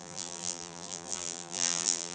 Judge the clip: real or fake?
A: fake